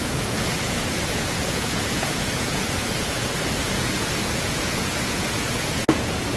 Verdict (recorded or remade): remade